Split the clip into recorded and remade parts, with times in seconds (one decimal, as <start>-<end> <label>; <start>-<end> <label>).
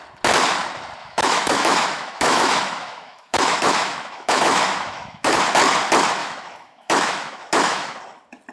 0.0-1.0 recorded; 1.0-5.4 remade; 5.4-6.2 recorded; 6.2-8.0 remade; 8.0-8.5 recorded